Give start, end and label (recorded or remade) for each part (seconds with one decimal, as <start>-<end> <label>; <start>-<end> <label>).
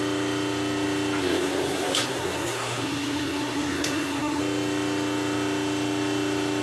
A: 0.0-1.2 recorded; 1.2-4.4 remade; 4.4-6.6 recorded